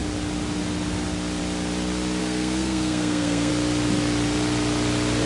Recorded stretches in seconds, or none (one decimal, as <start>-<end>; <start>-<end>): 0.0-2.2; 3.5-5.3